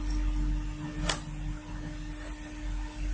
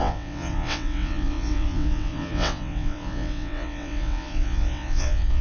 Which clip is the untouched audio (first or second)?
first